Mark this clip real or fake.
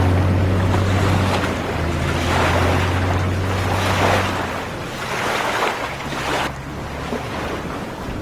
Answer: real